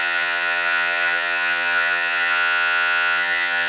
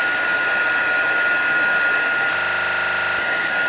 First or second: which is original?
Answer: second